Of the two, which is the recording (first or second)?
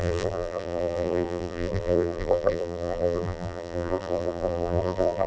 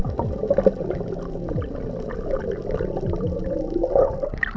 second